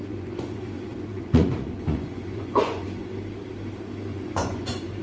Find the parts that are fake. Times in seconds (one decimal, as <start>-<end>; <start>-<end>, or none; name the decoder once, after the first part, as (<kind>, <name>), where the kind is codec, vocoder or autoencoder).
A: 0.0-3.0 (vocoder, Vocos); 4.1-5.0